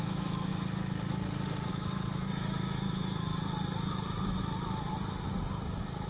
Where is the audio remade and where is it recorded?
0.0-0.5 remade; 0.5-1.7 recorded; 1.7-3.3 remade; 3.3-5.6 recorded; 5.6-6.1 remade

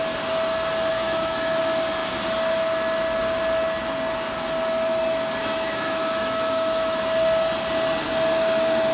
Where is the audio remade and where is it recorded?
0.0-0.9 recorded; 0.9-1.6 remade; 1.6-5.4 recorded; 5.4-7.0 remade; 7.0-8.9 recorded

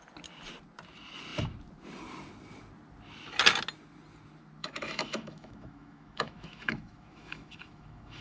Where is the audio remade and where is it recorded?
0.0-4.6 recorded; 4.6-8.2 remade

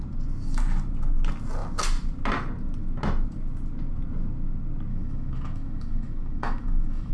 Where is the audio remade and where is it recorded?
0.0-4.9 recorded; 4.9-7.1 remade

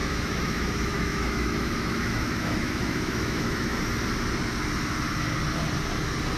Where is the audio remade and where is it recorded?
0.0-3.8 remade; 3.8-6.4 recorded